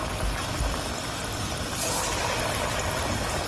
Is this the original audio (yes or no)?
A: yes